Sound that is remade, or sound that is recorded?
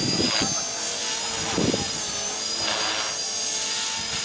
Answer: recorded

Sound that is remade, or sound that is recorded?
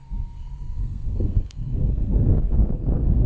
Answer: remade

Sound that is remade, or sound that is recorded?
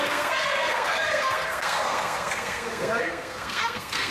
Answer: remade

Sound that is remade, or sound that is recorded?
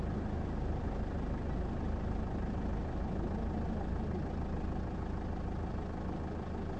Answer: recorded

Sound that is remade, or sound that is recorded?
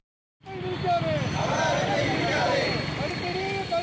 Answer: recorded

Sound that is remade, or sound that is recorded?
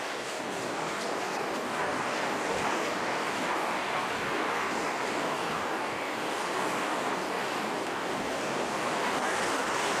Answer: remade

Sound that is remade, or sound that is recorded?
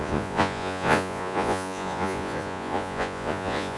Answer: remade